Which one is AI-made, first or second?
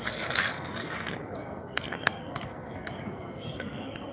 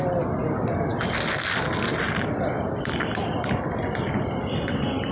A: first